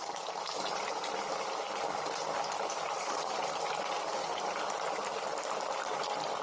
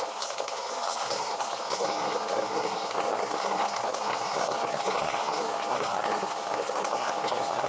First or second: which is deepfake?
second